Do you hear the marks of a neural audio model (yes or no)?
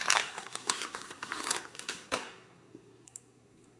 yes